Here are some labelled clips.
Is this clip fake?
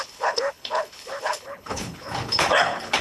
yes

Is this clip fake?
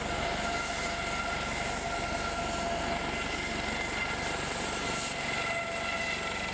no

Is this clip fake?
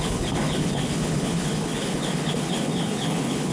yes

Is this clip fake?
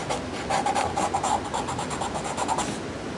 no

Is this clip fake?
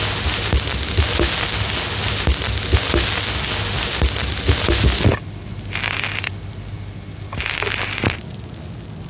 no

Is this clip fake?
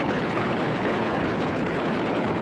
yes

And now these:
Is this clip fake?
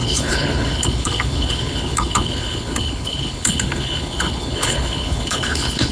yes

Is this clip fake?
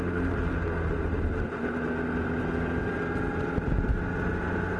no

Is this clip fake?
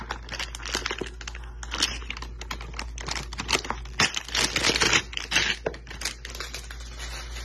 no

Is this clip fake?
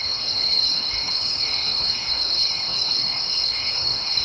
yes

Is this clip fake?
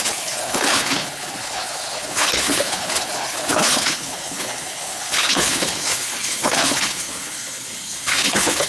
yes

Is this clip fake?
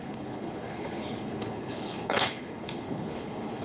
yes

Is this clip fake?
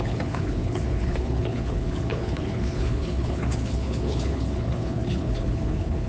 yes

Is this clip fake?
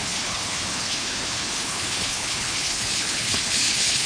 yes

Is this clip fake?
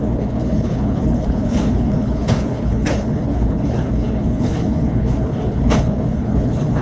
yes